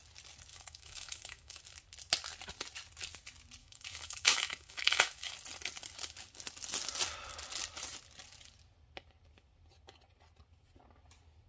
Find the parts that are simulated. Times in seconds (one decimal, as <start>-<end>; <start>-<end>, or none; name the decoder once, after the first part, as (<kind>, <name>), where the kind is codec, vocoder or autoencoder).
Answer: 0.5-1.6 (autoencoder, DAC-VAE); 3.6-5.3